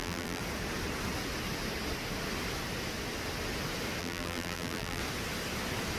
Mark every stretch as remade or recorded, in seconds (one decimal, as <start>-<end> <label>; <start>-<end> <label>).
0.0-0.4 remade; 0.4-4.0 recorded; 4.0-5.0 remade; 5.0-6.0 recorded